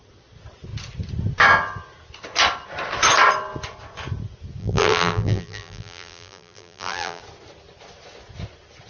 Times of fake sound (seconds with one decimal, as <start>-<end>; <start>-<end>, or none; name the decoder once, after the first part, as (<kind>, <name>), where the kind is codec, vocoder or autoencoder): 4.6-7.2 (vocoder, BigVGAN v2)